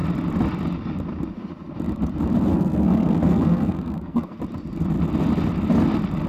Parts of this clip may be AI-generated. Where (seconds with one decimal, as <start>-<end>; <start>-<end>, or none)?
2.5-4.4